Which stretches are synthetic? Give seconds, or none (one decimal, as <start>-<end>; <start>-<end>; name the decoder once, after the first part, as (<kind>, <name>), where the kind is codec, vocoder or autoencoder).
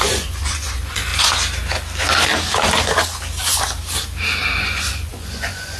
0.0-1.1 (vocoder, Vocos); 4.6-5.8